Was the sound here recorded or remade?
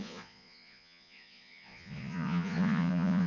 remade